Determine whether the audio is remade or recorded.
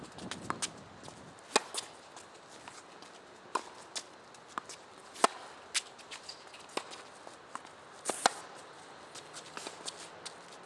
recorded